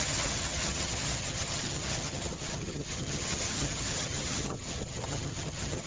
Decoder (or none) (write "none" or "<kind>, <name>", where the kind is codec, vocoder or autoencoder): vocoder, HiFi-GAN